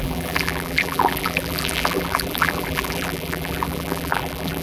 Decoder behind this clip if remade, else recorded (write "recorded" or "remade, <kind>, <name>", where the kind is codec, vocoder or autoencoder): remade, vocoder, BigVGAN v2